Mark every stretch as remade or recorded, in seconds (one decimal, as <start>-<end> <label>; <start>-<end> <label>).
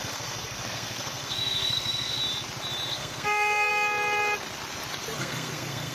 0.0-2.2 remade; 2.2-2.9 recorded; 2.9-3.7 remade; 3.7-5.2 recorded; 5.2-5.9 remade